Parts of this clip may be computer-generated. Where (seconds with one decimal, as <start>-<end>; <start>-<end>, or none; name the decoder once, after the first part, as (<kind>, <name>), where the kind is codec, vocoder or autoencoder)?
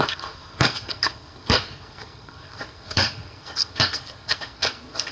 0.0-5.1 (codec, SNAC)